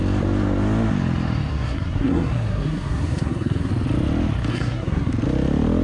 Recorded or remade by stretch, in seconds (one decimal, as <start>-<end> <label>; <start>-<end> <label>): 0.0-1.5 recorded; 1.5-3.7 remade; 3.7-4.5 recorded; 4.5-5.1 remade; 5.1-5.8 recorded